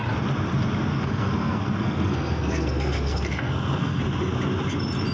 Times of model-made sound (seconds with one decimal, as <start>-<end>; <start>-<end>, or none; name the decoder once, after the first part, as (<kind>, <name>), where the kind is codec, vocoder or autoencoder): 0.9-4.0 (codec, SNAC)